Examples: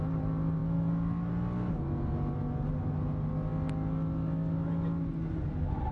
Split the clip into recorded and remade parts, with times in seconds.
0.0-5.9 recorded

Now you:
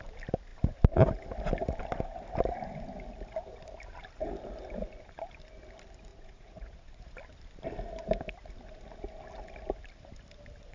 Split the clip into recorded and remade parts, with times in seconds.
0.0-6.1 recorded; 6.1-7.0 remade; 7.0-10.7 recorded

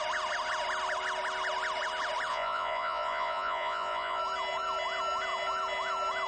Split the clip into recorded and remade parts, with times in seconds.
0.0-2.3 recorded; 2.3-4.2 remade; 4.2-6.3 recorded

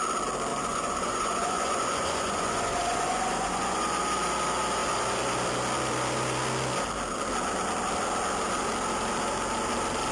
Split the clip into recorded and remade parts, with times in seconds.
0.0-0.5 recorded; 0.5-4.0 remade; 4.0-10.1 recorded

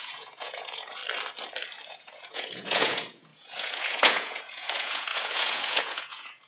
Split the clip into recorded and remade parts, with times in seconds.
0.0-1.0 remade; 1.0-1.9 recorded; 1.9-6.5 remade

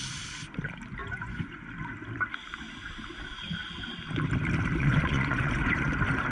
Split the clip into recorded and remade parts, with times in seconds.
0.0-1.0 recorded; 1.0-1.6 remade; 1.6-4.8 recorded; 4.8-5.8 remade; 5.8-6.3 recorded

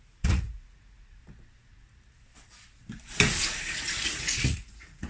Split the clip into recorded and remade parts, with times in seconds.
0.0-1.2 remade; 1.2-3.6 recorded; 3.6-5.1 remade